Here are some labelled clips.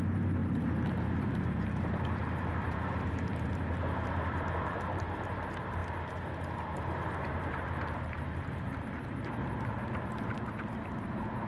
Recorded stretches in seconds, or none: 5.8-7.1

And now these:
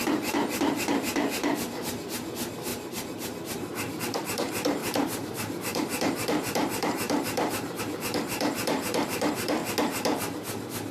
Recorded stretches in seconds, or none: 9.6-10.9

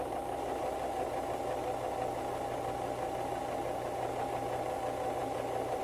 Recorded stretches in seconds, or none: 0.0-5.8

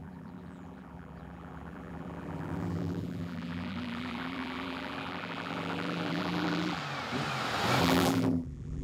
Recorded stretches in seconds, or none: 6.8-7.8

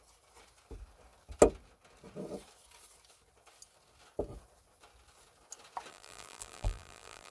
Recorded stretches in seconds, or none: 0.0-5.9